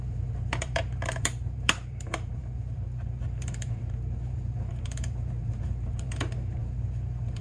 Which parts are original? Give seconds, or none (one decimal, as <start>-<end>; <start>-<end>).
none